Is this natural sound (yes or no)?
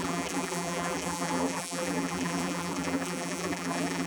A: no